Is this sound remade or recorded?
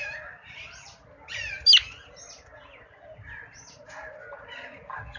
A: recorded